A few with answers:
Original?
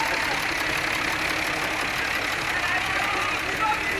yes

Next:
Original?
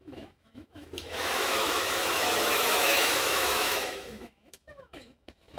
no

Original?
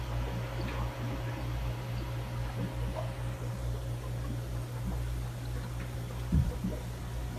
yes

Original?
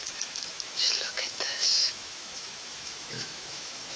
no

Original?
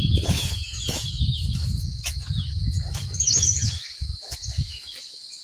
no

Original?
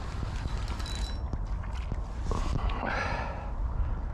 yes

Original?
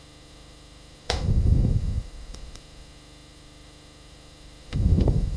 no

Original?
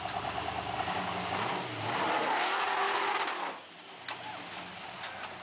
yes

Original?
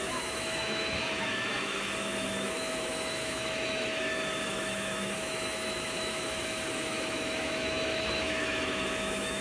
no